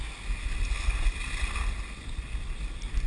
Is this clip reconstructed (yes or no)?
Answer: no